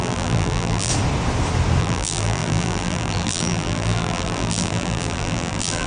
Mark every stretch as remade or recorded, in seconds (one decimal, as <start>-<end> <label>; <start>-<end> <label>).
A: 0.0-0.9 remade; 0.9-1.8 recorded; 1.8-5.9 remade